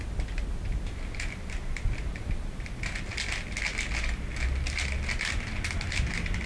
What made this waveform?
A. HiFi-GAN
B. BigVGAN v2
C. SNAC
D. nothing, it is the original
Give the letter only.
D